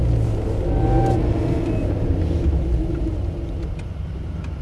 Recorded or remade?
recorded